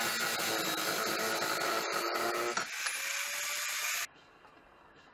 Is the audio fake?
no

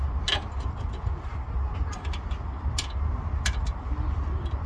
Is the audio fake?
no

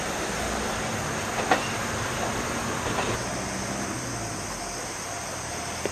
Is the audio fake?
no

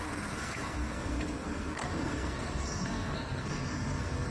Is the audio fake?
yes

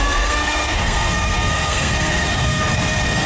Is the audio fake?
yes